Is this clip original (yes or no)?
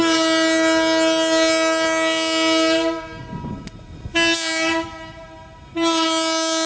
yes